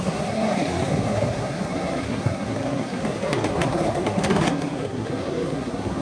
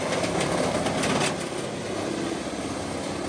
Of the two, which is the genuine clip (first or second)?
second